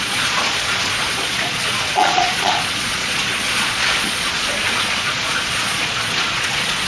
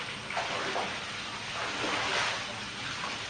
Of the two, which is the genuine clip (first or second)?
second